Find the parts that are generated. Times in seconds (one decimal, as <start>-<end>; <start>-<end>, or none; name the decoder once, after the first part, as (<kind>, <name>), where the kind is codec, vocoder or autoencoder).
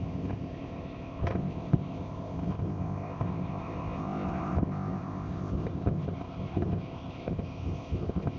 0.0-8.4 (codec, ZipCodec)